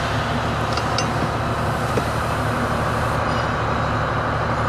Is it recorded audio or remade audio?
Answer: recorded